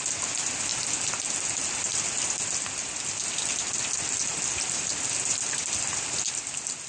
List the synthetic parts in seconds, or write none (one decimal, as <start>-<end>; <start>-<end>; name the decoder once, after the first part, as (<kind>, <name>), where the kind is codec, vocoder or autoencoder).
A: none